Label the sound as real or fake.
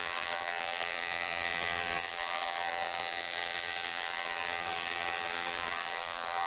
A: fake